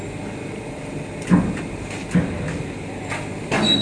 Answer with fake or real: real